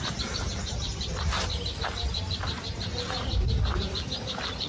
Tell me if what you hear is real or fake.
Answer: fake